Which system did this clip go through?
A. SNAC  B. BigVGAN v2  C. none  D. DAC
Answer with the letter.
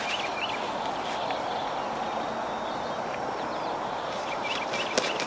C